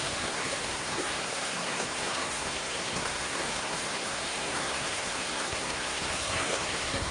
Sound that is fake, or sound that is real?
fake